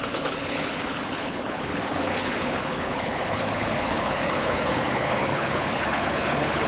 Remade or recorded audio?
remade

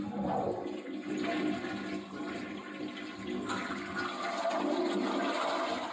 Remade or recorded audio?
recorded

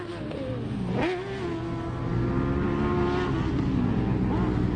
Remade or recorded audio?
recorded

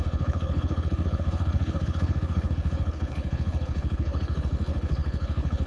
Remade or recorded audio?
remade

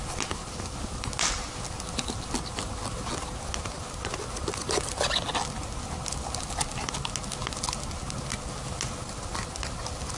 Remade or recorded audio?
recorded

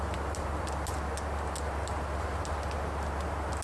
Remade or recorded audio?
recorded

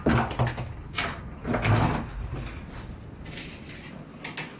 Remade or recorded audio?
recorded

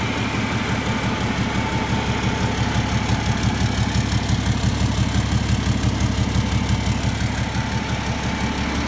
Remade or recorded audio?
recorded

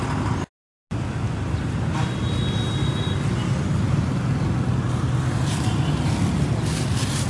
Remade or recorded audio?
recorded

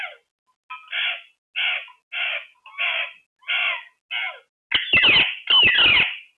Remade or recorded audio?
recorded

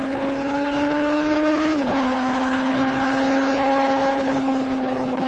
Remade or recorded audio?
remade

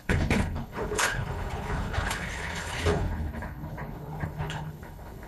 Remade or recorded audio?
remade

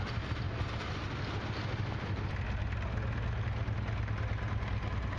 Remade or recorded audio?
recorded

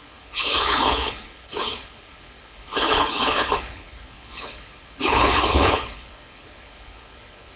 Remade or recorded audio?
remade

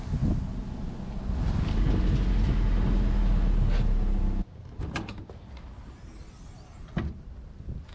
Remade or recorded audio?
recorded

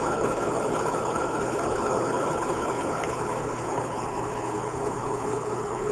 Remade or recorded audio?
remade